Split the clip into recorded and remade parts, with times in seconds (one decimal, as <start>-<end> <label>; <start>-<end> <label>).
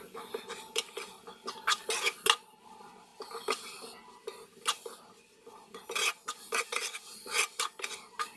0.0-8.4 recorded